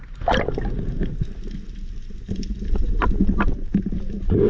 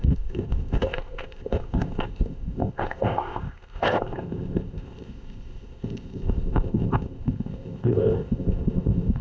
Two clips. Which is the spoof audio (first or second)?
second